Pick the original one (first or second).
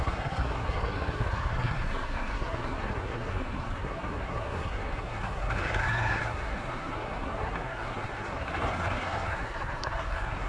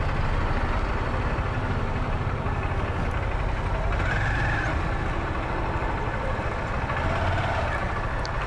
second